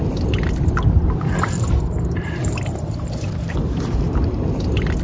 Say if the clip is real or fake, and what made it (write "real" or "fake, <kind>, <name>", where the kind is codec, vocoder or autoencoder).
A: real